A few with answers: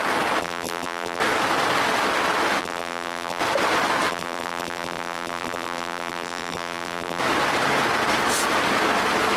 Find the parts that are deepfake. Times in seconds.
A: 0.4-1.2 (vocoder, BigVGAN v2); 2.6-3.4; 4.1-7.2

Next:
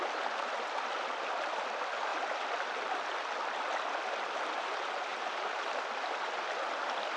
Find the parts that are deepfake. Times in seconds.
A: 5.1-5.7 (vocoder, BigVGAN v2)